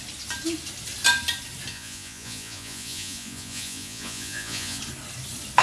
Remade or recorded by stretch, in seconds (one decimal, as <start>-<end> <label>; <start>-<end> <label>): 0.0-1.7 recorded; 1.7-4.8 remade; 4.8-5.6 recorded